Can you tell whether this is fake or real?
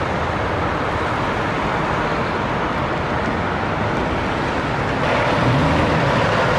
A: fake